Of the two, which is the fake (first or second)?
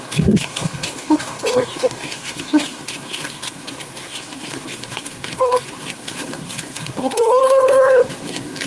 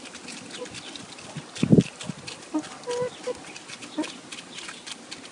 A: first